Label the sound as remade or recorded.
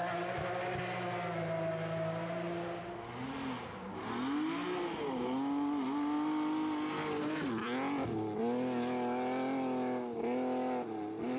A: recorded